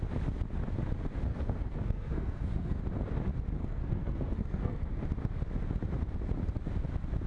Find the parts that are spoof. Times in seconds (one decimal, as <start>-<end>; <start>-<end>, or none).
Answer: 1.3-2.8; 3.6-4.9